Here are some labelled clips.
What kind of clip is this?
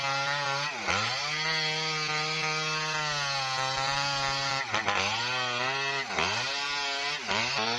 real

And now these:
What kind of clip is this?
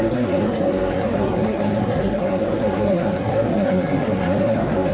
fake